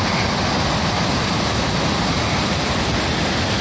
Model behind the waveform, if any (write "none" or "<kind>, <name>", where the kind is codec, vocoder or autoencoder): none